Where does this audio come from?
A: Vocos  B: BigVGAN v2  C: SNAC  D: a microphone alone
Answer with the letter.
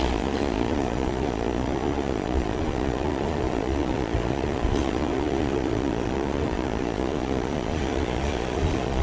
A